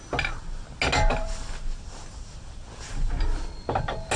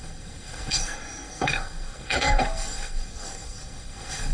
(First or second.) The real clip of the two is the first